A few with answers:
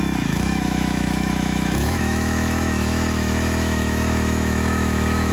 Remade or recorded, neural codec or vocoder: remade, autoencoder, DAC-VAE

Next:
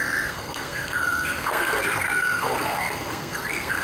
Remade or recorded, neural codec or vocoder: remade, codec, SNAC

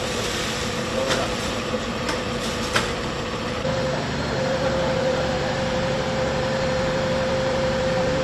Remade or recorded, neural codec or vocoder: remade, vocoder, BigVGAN v2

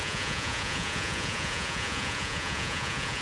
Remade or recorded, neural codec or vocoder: remade, vocoder, Vocos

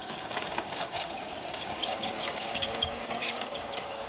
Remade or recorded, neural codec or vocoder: remade, codec, DAC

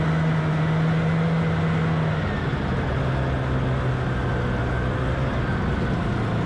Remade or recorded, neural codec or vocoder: recorded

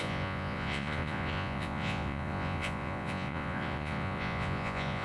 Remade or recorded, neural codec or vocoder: remade, vocoder, Vocos